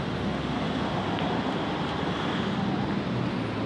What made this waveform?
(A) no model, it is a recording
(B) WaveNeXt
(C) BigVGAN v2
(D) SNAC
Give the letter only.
A